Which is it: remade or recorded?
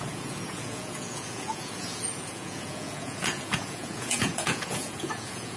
remade